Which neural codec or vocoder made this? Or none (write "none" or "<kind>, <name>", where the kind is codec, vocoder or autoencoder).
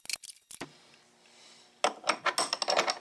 none